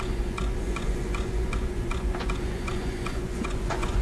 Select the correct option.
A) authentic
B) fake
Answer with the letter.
B